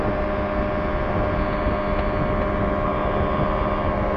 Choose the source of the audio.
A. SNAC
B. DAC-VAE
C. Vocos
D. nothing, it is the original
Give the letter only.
D